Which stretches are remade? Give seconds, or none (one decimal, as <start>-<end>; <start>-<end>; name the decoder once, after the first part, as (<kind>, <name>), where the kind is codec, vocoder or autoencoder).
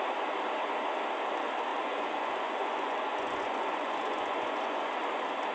1.7-5.0 (vocoder, Vocos)